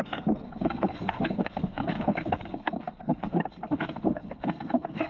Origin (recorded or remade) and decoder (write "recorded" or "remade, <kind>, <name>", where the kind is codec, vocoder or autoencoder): remade, codec, SNAC